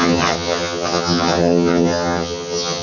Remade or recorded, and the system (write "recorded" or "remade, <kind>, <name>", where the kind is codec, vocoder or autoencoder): remade, vocoder, HiFi-GAN